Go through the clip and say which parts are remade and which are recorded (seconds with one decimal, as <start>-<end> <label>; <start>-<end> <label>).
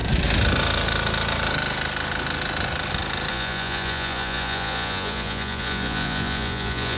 0.0-3.3 recorded; 3.3-7.0 remade